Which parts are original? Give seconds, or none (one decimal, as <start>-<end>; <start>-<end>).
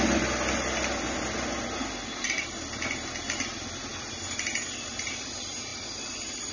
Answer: 0.0-5.7